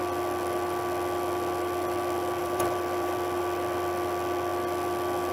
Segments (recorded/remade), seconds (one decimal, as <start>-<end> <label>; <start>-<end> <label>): 0.0-2.4 recorded; 2.4-3.4 remade; 3.4-5.3 recorded